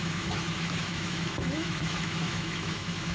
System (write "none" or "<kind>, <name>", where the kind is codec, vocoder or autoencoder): autoencoder, DAC-VAE